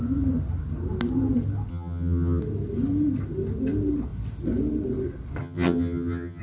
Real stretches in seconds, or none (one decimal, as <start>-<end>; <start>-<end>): 0.0-1.7; 2.4-5.4